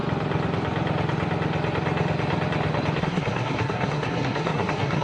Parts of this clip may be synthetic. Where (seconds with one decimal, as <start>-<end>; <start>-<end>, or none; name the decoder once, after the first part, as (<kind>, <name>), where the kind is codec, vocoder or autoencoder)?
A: 3.0-5.0 (codec, SNAC)